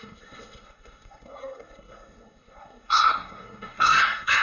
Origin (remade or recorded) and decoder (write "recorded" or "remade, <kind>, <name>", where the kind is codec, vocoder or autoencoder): remade, codec, SNAC